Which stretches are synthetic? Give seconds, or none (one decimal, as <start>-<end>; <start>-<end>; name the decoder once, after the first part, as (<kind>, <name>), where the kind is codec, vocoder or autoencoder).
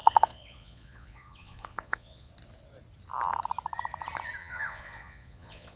0.0-2.3 (vocoder, Vocos); 4.4-5.8